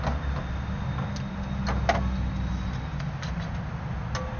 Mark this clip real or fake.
real